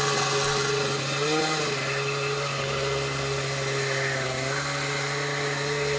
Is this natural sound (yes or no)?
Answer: yes